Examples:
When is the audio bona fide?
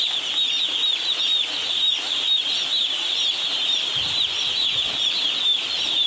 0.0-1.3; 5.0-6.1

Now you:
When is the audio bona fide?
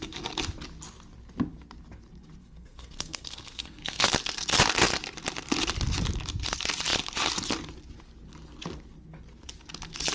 0.0-2.4; 4.1-10.1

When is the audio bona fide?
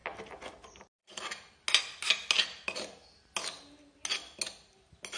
0.0-5.2